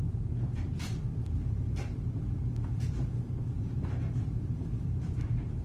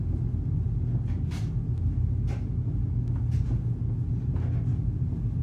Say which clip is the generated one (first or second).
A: first